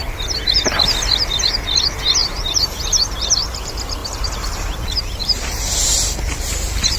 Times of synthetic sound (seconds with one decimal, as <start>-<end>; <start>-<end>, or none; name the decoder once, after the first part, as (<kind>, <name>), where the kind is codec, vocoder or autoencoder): 2.2-3.5 (vocoder, BigVGAN v2); 4.0-7.0